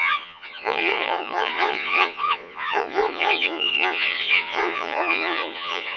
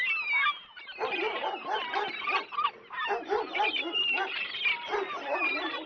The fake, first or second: first